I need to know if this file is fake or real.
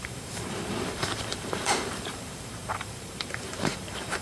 fake